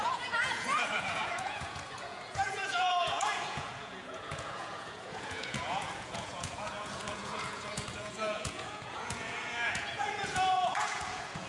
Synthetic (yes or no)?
yes